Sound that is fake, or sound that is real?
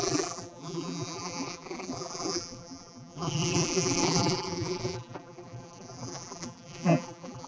fake